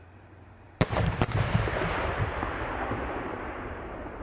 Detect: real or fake fake